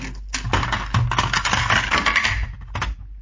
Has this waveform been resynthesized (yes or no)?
no